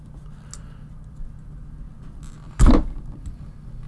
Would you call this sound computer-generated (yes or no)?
no